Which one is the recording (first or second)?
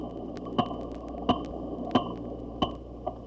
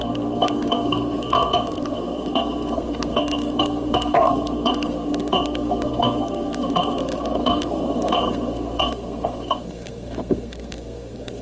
first